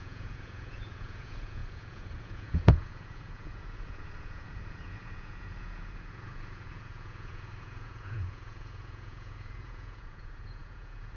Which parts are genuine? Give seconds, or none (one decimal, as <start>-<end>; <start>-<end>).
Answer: none